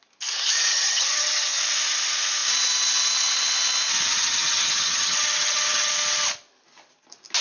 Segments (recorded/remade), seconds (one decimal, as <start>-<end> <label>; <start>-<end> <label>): 0.0-0.7 recorded; 0.7-1.6 remade; 1.6-4.1 recorded; 4.1-5.9 remade; 5.9-7.4 recorded